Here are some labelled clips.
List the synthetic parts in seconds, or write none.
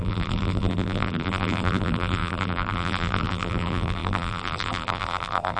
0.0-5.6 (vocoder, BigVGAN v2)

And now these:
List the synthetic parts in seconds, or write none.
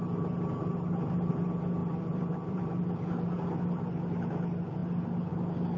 1.8-2.9 (vocoder, BigVGAN v2)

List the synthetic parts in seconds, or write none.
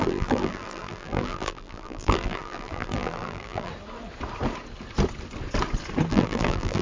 0.0-3.7 (vocoder, BigVGAN v2); 6.1-6.8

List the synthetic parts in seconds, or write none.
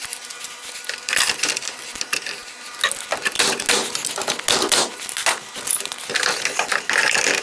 0.0-2.4 (vocoder, BigVGAN v2); 6.4-7.4